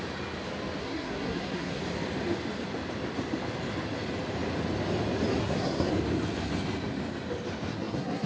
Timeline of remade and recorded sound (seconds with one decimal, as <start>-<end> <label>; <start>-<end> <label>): 0.0-0.8 recorded; 0.8-1.8 remade; 1.8-5.4 recorded; 5.4-5.9 remade; 5.9-7.7 recorded; 7.7-8.3 remade